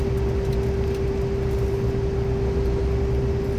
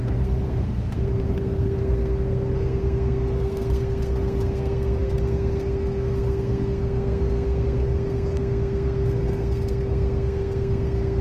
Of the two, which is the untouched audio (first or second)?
first